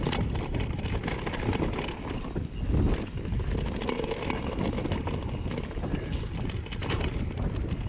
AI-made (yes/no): no